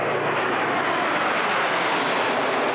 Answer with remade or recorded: recorded